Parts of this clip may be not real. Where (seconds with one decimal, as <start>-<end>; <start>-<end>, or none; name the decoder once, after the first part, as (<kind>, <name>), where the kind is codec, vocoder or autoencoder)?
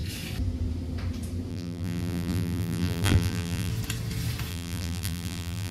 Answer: 1.5-3.7 (vocoder, BigVGAN v2); 4.5-5.7